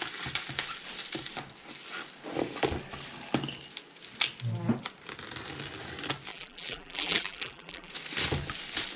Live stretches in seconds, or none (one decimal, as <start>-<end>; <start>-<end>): 0.0-6.3; 7.9-9.0